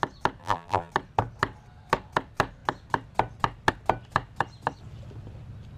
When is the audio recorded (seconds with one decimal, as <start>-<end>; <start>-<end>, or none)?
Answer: 0.0-0.4; 0.9-5.8